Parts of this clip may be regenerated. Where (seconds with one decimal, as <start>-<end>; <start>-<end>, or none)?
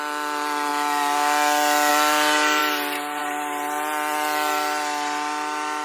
none